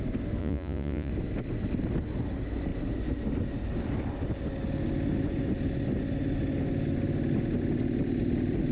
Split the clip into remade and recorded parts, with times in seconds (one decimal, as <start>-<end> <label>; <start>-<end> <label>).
0.0-0.4 recorded; 0.4-1.1 remade; 1.1-8.7 recorded